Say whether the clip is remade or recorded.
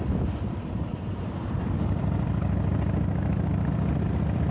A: remade